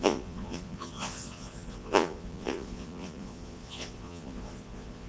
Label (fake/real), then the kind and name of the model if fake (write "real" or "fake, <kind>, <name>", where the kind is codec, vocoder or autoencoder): fake, vocoder, Vocos